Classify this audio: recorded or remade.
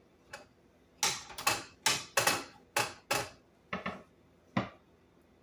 recorded